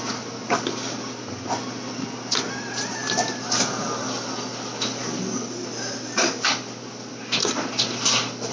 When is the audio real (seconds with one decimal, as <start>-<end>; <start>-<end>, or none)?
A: 0.0-8.5